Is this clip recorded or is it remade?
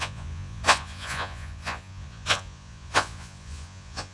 remade